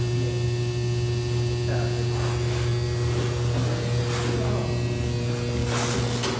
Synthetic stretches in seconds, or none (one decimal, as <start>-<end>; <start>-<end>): none

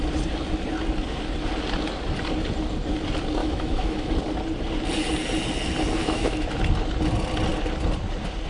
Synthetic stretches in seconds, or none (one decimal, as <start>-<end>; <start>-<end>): 3.4-4.1; 6.0-6.6